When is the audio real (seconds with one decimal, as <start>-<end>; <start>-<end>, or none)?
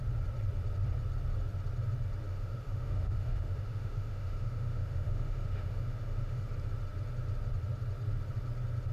0.0-2.3; 6.5-8.9